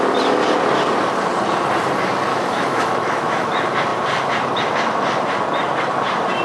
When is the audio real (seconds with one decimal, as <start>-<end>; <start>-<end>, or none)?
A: 0.0-2.3; 3.5-6.4